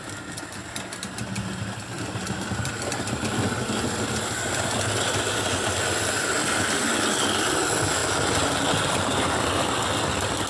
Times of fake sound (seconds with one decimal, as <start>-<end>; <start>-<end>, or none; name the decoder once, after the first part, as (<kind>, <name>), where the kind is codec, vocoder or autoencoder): 6.2-6.9 (vocoder, BigVGAN v2)